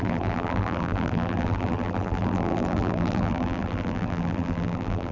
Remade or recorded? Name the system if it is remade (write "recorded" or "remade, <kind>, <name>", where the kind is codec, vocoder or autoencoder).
remade, vocoder, BigVGAN v2